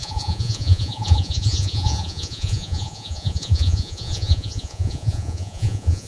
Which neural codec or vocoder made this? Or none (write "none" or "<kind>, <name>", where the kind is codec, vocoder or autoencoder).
vocoder, Vocos